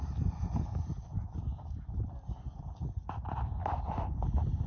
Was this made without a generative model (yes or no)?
yes